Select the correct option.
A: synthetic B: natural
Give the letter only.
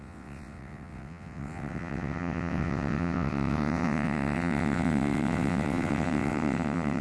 A